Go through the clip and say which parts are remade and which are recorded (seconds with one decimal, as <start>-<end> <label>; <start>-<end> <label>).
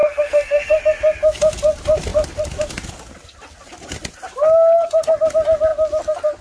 0.0-0.8 remade; 0.8-6.4 recorded